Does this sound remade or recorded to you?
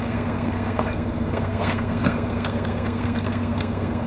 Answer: remade